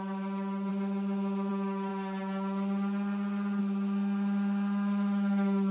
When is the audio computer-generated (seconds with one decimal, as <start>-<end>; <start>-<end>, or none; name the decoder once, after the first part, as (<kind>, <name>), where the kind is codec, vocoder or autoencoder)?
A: 0.0-0.7 (autoencoder, DAC-VAE); 1.5-1.9; 3.6-5.7